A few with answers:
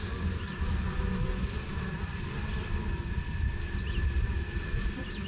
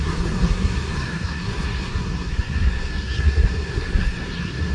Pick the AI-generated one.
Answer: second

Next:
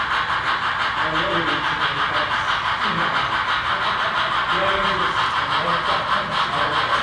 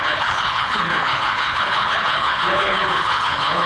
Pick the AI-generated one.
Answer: second